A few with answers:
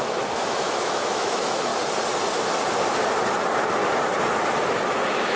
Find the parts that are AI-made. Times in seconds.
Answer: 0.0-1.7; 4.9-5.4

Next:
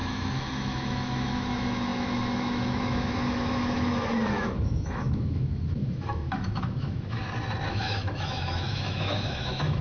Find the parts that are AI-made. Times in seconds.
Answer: 0.0-7.2; 7.7-9.8

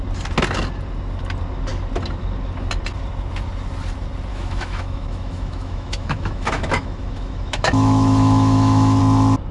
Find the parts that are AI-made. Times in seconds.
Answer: 4.3-9.0

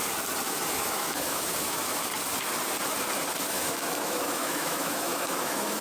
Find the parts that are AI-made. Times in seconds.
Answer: 0.7-2.1; 3.4-5.8

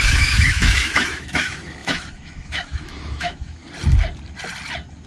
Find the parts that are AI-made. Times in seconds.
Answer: 0.0-3.6

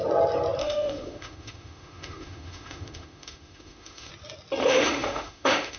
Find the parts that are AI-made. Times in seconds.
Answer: 0.6-4.1; 4.6-5.8

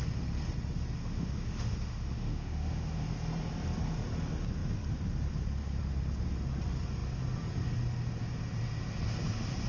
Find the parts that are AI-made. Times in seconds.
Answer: 1.0-3.0